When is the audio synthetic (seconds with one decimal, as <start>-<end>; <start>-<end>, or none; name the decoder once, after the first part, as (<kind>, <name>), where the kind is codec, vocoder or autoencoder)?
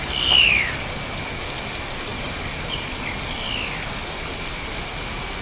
none